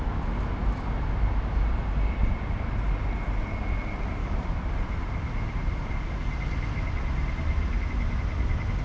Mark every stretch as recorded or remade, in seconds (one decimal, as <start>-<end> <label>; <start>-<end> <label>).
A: 0.0-4.2 recorded; 4.2-4.7 remade; 4.7-8.8 recorded